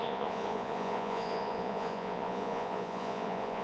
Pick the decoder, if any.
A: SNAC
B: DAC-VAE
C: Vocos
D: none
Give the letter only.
C